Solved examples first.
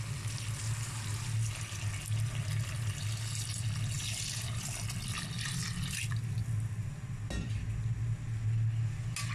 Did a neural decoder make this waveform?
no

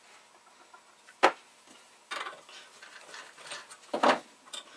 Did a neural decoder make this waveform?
no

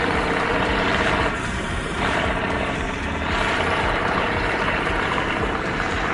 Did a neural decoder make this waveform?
yes